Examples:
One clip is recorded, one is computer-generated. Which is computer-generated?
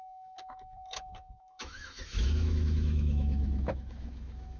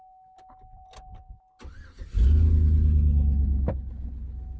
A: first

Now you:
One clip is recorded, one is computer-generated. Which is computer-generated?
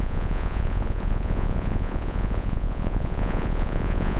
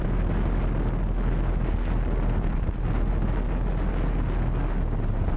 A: first